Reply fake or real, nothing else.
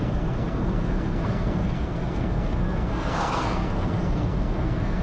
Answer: fake